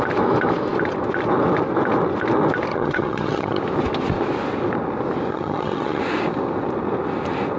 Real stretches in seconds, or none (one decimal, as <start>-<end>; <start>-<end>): 0.0-2.7; 3.6-5.3; 6.0-7.6